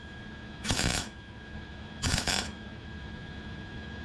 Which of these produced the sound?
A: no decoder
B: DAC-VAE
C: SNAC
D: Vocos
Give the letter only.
B